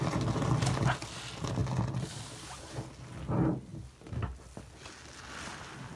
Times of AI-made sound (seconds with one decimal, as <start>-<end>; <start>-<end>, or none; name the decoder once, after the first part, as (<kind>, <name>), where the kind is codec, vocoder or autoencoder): none